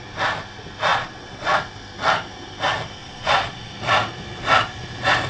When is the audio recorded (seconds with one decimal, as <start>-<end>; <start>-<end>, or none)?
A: 0.0-0.9; 1.6-3.0; 3.7-5.3